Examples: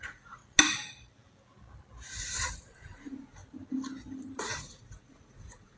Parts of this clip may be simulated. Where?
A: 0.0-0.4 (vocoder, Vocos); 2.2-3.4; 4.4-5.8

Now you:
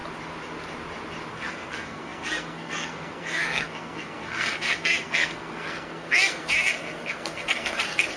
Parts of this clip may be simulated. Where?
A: 1.3-8.2 (codec, SNAC)

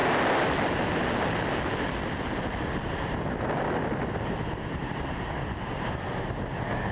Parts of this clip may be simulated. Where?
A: 4.1-6.9 (vocoder, BigVGAN v2)

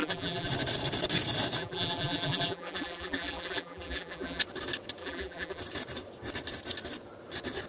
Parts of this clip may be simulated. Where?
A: 0.0-0.5 (vocoder, BigVGAN v2); 1.6-4.4; 5.0-5.6